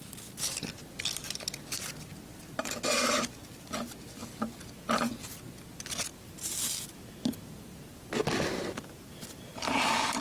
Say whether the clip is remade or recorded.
recorded